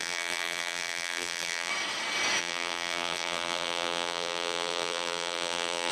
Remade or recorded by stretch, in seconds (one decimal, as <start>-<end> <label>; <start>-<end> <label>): 0.0-1.7 remade; 1.7-2.4 recorded; 2.4-5.9 remade